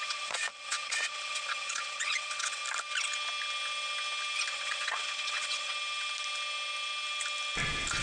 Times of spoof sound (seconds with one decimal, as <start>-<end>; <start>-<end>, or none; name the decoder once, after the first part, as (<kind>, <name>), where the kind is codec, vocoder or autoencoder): 0.0-2.6 (vocoder, WaveNeXt); 4.5-5.7